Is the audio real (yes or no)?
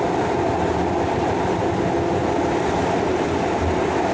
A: yes